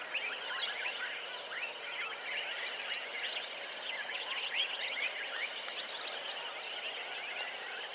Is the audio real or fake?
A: real